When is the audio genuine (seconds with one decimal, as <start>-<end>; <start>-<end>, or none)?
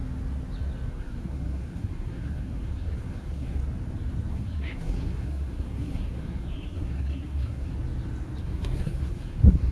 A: 0.0-0.9; 3.6-4.3; 7.7-8.4